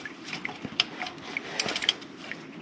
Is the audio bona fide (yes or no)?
yes